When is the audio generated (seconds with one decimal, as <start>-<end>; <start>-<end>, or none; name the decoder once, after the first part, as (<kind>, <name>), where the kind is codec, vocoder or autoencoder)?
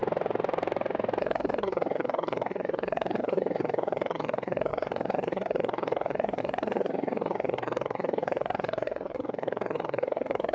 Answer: 1.2-10.5 (codec, SNAC)